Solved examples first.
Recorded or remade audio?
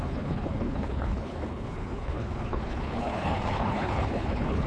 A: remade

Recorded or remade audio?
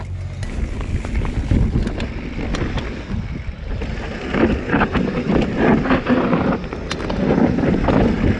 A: recorded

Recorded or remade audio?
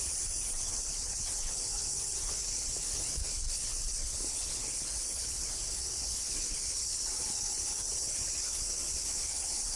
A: remade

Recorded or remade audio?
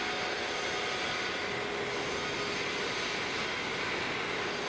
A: recorded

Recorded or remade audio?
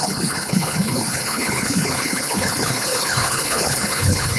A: remade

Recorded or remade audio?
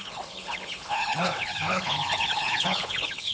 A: remade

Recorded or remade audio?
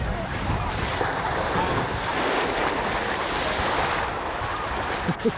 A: recorded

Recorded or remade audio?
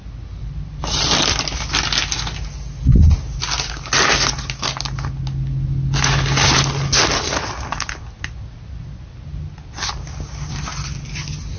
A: recorded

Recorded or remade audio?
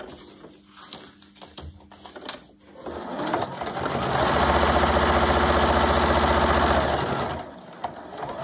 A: recorded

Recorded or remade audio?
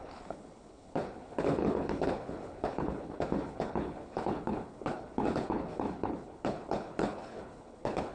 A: remade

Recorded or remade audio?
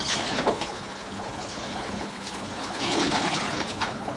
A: remade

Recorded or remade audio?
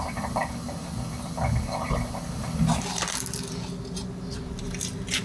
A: recorded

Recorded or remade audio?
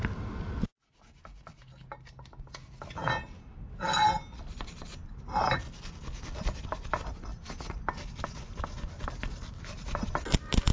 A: recorded